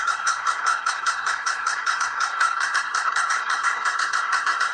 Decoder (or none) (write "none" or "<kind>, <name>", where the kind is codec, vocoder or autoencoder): codec, SNAC